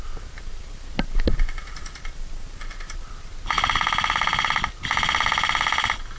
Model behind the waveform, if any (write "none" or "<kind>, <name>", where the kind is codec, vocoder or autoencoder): none